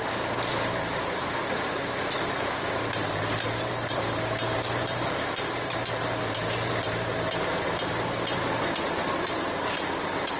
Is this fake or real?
fake